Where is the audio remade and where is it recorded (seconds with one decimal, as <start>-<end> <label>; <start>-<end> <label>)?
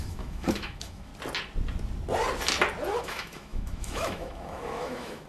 0.0-1.1 remade; 1.1-3.0 recorded; 3.0-5.3 remade